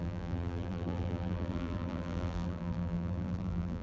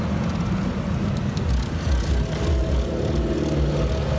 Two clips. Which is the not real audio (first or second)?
first